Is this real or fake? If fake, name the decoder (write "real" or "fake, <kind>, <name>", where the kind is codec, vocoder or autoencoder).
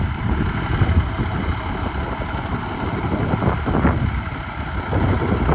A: fake, vocoder, BigVGAN v2